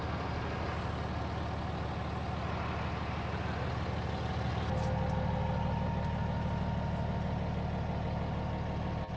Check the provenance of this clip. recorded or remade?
recorded